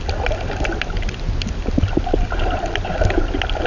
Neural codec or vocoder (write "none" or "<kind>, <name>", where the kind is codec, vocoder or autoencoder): none